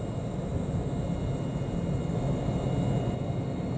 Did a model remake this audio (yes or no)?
no